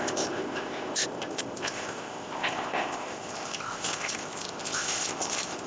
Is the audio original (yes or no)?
no